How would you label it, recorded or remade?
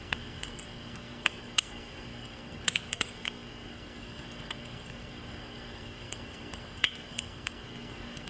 remade